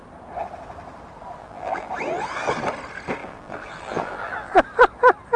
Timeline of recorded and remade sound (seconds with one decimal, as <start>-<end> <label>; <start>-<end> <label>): 0.0-1.4 recorded; 1.4-1.9 remade; 1.9-3.2 recorded; 3.2-4.5 remade; 4.5-5.4 recorded